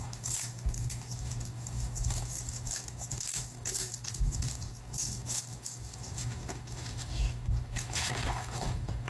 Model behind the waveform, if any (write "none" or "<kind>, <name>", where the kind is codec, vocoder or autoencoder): codec, DAC